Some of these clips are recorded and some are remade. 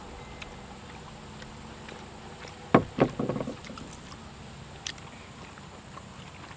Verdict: recorded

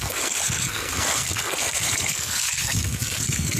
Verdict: remade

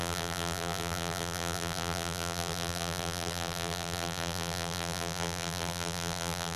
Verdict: remade